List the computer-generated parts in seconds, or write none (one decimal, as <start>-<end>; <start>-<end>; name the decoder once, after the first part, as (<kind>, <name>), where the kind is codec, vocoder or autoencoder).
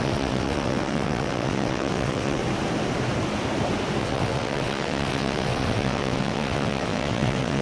0.0-2.4 (vocoder, WaveNeXt); 4.0-7.6